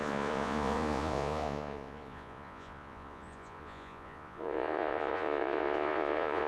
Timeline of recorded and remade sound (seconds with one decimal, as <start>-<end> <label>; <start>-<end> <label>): 0.0-6.5 remade